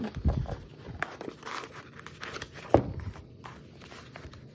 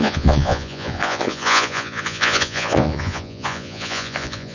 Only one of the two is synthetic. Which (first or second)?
second